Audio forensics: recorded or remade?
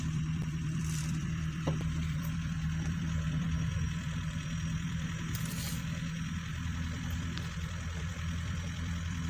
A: remade